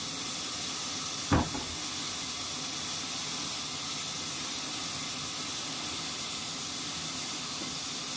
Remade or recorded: recorded